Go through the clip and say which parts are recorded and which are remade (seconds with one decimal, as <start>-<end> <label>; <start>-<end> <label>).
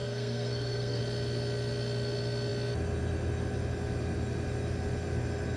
0.0-1.0 remade; 1.0-5.6 recorded